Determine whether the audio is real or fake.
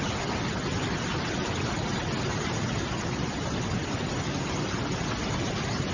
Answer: real